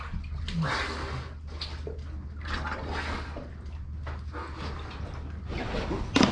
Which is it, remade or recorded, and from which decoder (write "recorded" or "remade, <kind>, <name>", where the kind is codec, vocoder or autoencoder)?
recorded